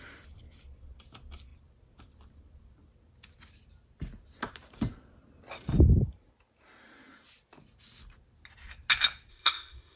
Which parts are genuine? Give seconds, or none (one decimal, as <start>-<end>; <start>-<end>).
0.0-9.3